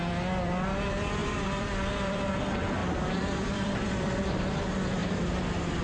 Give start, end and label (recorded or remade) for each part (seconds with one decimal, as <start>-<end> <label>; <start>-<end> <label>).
0.0-1.2 recorded; 1.2-2.3 remade; 2.3-2.8 recorded; 2.8-4.2 remade; 4.2-5.8 recorded